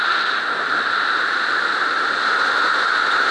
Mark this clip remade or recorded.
recorded